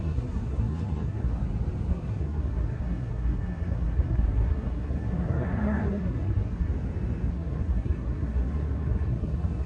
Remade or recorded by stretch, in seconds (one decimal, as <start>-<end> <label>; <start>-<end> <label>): 0.0-1.4 remade; 1.4-1.9 recorded; 1.9-6.7 remade; 6.7-7.3 recorded; 7.3-9.7 remade